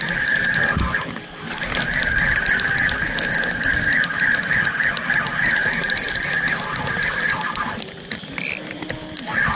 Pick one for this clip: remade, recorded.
recorded